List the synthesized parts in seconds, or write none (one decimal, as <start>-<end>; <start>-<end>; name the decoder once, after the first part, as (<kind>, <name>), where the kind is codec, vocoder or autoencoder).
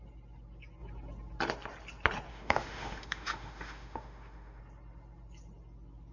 2.3-4.6 (autoencoder, DAC-VAE)